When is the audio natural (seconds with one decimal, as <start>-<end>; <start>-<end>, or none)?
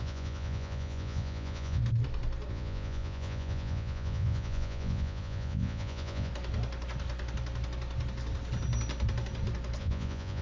1.8-2.5; 6.3-9.8